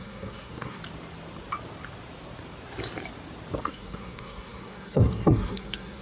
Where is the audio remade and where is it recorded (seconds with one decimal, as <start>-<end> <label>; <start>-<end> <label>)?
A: 0.0-0.8 remade; 0.8-3.6 recorded; 3.6-6.0 remade

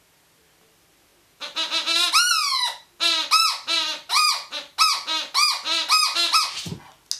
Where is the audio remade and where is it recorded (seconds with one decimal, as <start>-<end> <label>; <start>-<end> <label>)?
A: 0.0-6.1 recorded; 6.1-6.7 remade; 6.7-7.2 recorded

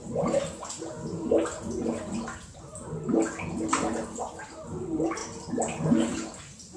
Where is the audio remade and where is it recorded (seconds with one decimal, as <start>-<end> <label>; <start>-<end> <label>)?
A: 0.0-6.8 recorded

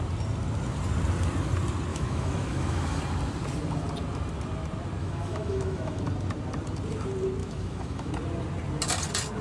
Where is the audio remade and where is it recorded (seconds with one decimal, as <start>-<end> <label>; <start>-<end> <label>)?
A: 0.0-1.9 recorded; 1.9-3.0 remade; 3.0-5.0 recorded; 5.0-6.0 remade; 6.0-7.4 recorded; 7.4-8.1 remade; 8.1-9.4 recorded

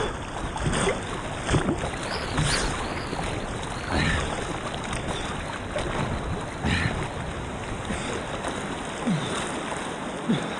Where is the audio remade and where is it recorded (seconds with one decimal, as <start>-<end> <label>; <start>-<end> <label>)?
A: 0.0-10.6 recorded

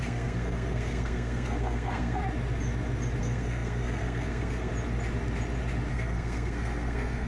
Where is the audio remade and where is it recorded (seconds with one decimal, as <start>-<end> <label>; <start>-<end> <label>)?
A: 0.0-2.2 remade; 2.2-3.2 recorded; 3.2-4.7 remade; 4.7-5.9 recorded; 5.9-7.3 remade

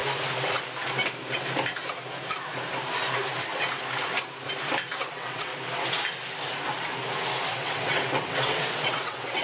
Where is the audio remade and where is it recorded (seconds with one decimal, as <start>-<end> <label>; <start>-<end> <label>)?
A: 0.0-5.1 recorded; 5.1-5.5 remade; 5.5-7.5 recorded; 7.5-9.4 remade

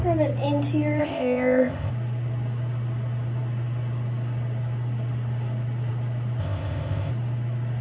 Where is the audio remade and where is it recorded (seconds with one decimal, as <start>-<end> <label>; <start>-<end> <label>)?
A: 0.0-1.0 recorded; 1.0-1.9 remade; 1.9-6.4 recorded; 6.4-7.1 remade; 7.1-7.8 recorded